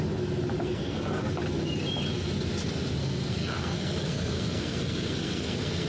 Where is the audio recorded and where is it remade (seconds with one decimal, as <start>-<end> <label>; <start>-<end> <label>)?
0.0-0.6 recorded; 0.6-1.3 remade; 1.3-3.0 recorded; 3.0-5.9 remade